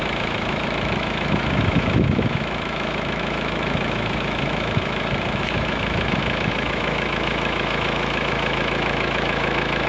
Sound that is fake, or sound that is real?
fake